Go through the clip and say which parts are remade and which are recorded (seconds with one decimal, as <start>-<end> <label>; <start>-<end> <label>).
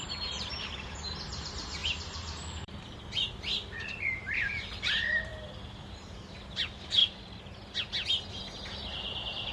0.0-5.3 remade; 5.3-5.8 recorded; 5.8-7.0 remade; 7.0-8.3 recorded; 8.3-9.5 remade